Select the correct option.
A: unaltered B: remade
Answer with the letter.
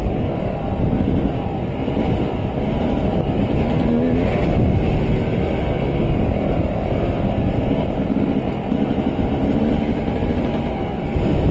A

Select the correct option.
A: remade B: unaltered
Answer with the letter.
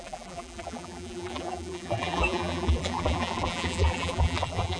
A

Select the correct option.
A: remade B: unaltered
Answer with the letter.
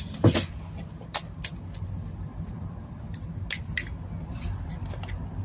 B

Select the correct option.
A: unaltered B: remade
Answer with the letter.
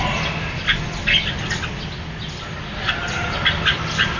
A